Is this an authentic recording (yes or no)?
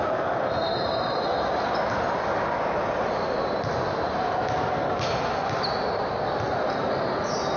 yes